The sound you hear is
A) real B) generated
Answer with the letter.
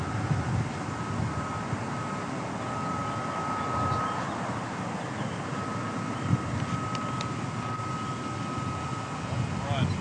A